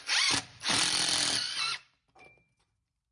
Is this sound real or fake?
fake